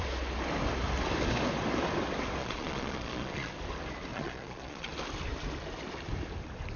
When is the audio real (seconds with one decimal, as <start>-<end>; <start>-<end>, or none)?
0.0-2.4; 3.5-4.1; 4.9-6.8